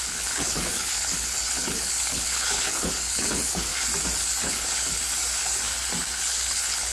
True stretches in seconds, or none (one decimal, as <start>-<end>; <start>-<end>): 3.7-4.5; 5.0-6.2